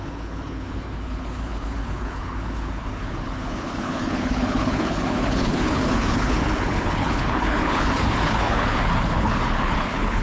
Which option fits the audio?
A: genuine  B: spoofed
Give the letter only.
B